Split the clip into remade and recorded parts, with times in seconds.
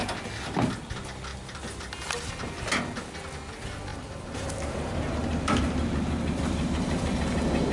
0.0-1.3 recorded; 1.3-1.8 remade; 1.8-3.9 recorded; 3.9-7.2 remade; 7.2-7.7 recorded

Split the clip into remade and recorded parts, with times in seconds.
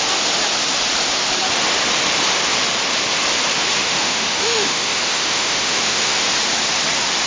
0.0-3.8 recorded; 3.8-6.2 remade; 6.2-7.3 recorded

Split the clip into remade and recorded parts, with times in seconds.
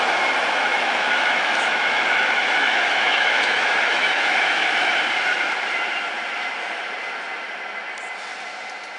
0.0-0.7 recorded; 0.7-4.9 remade; 4.9-9.0 recorded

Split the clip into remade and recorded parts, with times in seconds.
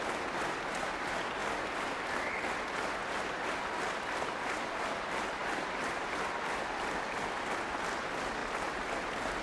0.0-1.4 recorded; 1.4-2.5 remade; 2.5-5.4 recorded; 5.4-6.3 remade; 6.3-8.4 recorded; 8.4-8.9 remade; 8.9-9.4 recorded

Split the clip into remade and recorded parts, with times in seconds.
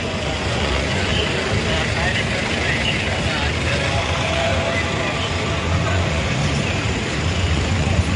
0.0-1.1 remade; 1.1-4.0 recorded; 4.0-4.5 remade; 4.5-5.6 recorded; 5.6-6.4 remade; 6.4-7.3 recorded; 7.3-8.2 remade